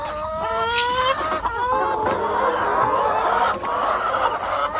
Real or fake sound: real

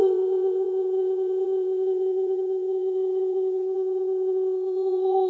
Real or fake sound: fake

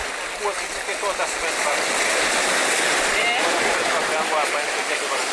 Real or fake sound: real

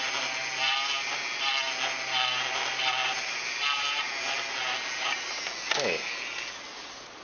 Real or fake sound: real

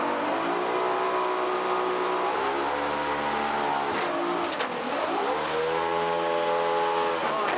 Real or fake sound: real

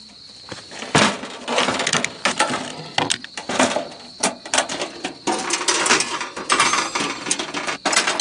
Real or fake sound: real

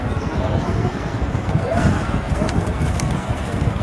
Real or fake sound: fake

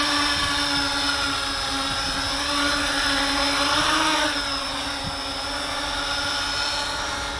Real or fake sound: real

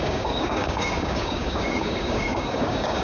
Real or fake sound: fake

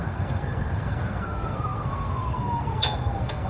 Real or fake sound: fake